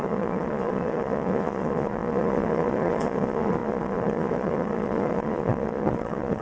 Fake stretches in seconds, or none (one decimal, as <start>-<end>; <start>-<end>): 0.0-6.4

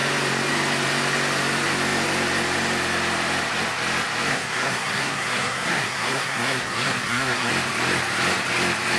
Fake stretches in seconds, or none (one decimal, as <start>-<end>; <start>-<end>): 4.3-7.5

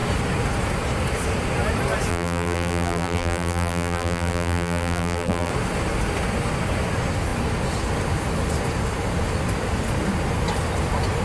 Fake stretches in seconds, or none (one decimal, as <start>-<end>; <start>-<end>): 2.1-5.5

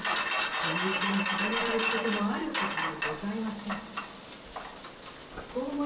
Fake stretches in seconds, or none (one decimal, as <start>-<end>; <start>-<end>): none

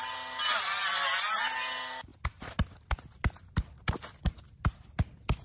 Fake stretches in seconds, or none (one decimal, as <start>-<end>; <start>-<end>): none

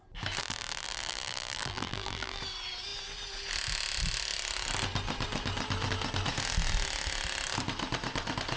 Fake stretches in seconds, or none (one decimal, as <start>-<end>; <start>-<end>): 0.4-2.4

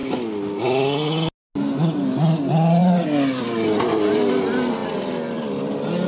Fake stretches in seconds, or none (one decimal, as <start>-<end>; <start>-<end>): 2.4-6.1